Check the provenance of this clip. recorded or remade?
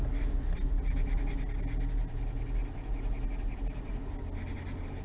recorded